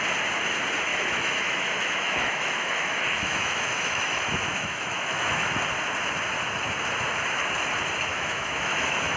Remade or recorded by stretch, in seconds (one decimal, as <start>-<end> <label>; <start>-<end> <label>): 0.0-0.9 recorded; 0.9-5.5 remade; 5.5-8.1 recorded; 8.1-9.2 remade